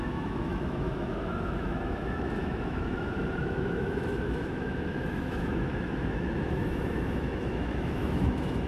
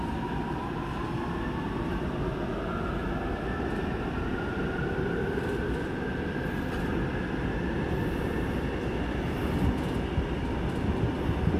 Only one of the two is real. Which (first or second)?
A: second